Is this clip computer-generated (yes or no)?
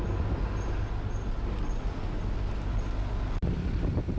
no